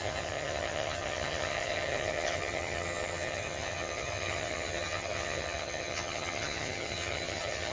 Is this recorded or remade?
remade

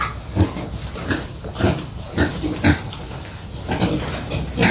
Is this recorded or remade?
recorded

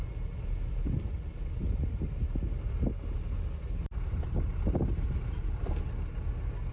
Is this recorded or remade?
recorded